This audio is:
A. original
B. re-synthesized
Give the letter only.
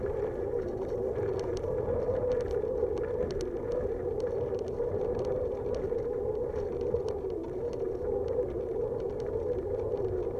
A